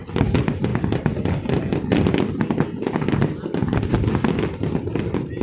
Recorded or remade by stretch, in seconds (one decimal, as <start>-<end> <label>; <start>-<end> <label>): 0.0-5.4 recorded